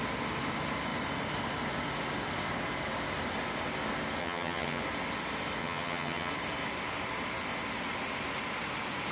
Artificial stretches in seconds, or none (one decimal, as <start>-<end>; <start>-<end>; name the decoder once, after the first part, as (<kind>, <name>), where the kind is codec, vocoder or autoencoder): 4.2-4.8 (vocoder, HiFi-GAN); 5.6-6.3